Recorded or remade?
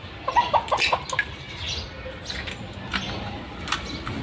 recorded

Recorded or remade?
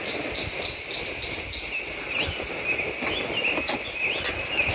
recorded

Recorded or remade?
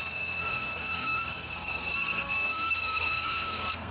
remade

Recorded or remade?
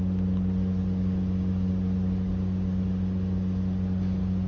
recorded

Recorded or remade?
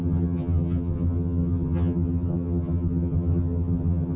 remade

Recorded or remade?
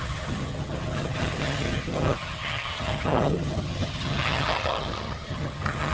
remade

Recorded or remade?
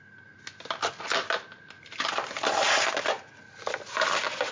recorded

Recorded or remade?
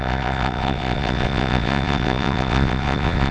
remade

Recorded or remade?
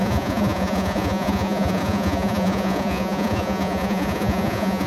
remade